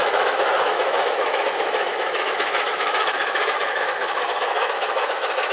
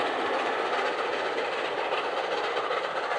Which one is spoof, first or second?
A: first